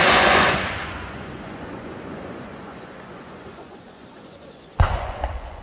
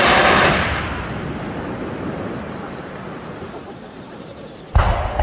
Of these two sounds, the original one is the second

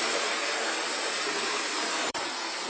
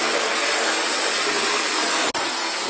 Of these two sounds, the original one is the second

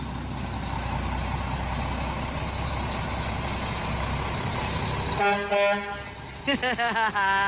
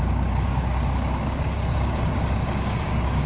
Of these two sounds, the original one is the first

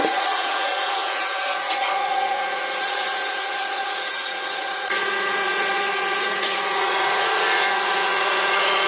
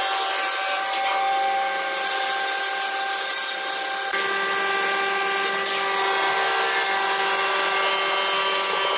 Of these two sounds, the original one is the second